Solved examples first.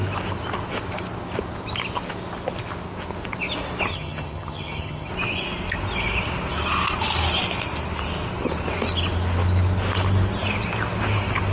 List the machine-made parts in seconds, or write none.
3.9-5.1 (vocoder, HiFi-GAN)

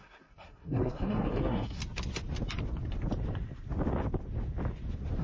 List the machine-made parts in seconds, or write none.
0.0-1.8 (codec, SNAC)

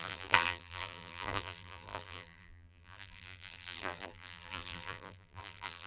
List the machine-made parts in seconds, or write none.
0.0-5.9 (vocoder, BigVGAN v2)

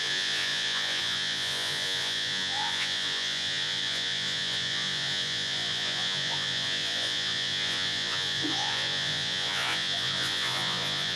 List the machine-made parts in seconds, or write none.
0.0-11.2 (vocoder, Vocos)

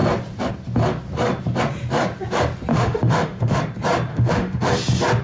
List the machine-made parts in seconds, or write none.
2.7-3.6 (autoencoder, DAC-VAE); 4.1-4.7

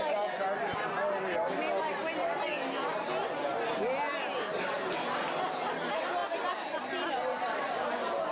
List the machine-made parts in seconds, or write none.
none

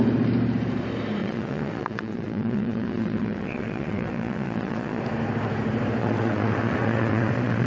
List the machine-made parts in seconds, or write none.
1.2-5.0 (vocoder, WaveNeXt); 6.0-7.7

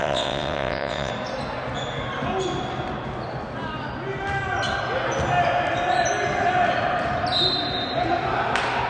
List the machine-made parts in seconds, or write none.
0.0-1.1 (vocoder, WaveNeXt)